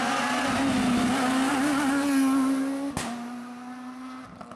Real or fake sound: real